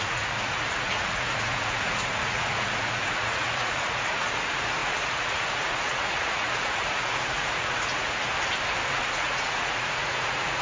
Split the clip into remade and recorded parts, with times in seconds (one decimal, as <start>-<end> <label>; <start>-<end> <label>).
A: 0.0-8.2 remade; 8.2-8.9 recorded; 8.9-10.6 remade